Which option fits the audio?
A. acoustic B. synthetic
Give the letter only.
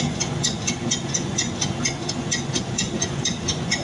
B